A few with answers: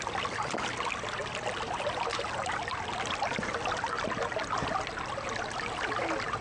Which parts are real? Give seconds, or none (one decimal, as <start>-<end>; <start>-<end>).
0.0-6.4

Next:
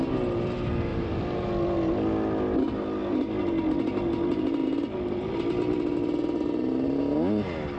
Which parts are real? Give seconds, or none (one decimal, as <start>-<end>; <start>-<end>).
0.0-0.9; 1.5-7.8

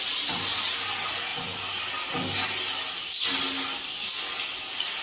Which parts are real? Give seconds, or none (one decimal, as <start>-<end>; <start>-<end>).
0.0-5.0